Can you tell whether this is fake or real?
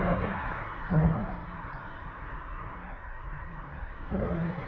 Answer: fake